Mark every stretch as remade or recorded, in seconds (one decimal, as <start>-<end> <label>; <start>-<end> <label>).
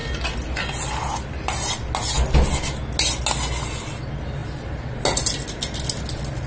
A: 0.0-6.5 recorded